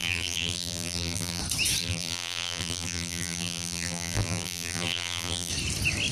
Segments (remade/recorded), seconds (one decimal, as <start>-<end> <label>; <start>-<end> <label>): 0.0-1.4 remade; 1.4-1.8 recorded; 1.8-5.5 remade; 5.5-6.1 recorded

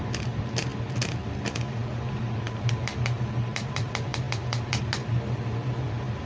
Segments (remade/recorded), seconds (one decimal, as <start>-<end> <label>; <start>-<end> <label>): 0.0-1.2 recorded; 1.2-4.8 remade; 4.8-6.3 recorded

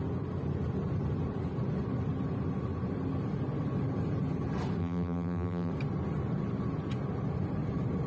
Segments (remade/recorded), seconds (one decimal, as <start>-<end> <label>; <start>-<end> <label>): 0.0-4.8 recorded; 4.8-5.7 remade; 5.7-8.1 recorded

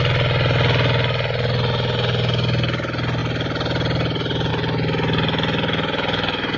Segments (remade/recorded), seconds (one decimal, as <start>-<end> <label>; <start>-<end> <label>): 0.0-3.2 recorded; 3.2-4.5 remade; 4.5-6.6 recorded

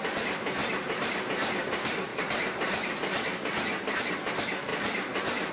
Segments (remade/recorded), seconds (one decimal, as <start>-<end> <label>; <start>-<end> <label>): 0.0-4.7 recorded; 4.7-5.5 remade

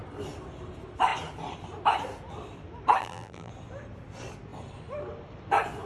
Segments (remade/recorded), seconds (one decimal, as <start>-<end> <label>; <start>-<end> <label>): 0.0-3.0 recorded; 3.0-3.5 remade; 3.5-5.9 recorded